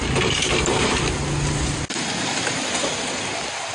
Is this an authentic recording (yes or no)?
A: yes